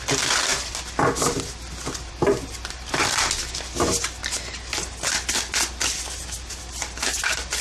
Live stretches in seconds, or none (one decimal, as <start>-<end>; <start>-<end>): 0.0-7.6